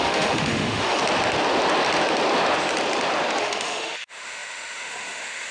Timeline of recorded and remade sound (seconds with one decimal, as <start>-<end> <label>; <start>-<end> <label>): 0.0-1.0 remade; 1.0-3.4 recorded; 3.4-5.5 remade